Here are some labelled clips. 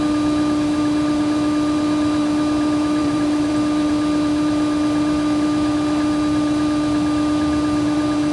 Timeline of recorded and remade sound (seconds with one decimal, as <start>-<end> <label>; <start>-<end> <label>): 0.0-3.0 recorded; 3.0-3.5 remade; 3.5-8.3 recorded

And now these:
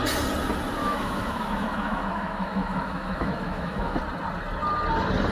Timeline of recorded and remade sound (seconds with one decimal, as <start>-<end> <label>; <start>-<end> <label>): 0.0-0.8 recorded; 0.8-4.0 remade; 4.0-5.3 recorded

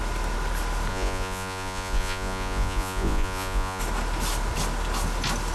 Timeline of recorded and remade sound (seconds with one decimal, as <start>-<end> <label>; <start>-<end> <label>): 0.0-0.9 recorded; 0.9-3.8 remade; 3.8-5.5 recorded